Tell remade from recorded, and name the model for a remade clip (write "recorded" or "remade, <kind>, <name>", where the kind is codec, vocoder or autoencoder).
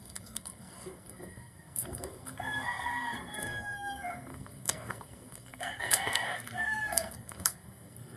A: remade, codec, SNAC